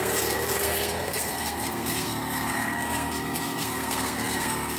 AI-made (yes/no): yes